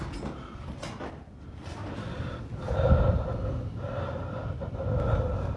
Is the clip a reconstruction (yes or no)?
no